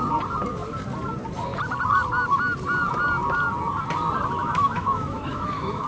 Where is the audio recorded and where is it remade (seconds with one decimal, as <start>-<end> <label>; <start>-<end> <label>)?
0.0-4.4 recorded; 4.4-5.9 remade